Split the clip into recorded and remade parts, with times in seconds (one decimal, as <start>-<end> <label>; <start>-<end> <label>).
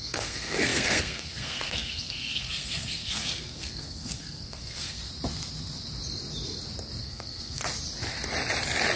0.0-5.0 remade; 5.0-7.0 recorded; 7.0-7.6 remade; 7.6-9.0 recorded